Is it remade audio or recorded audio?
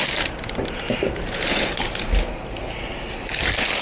recorded